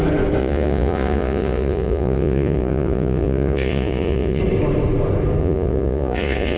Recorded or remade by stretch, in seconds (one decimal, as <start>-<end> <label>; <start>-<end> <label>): 0.0-0.4 recorded; 0.4-4.4 remade; 4.4-5.4 recorded; 5.4-6.6 remade